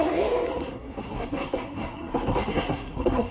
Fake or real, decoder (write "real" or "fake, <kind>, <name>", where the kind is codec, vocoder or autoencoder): fake, codec, SNAC